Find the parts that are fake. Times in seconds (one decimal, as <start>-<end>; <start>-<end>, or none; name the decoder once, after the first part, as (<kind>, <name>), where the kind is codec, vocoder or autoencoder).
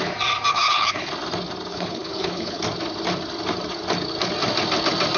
0.5-1.1 (codec, HILCodec); 1.7-2.6